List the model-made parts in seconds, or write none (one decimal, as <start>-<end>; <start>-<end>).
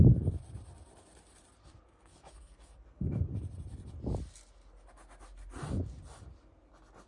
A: 1.6-3.3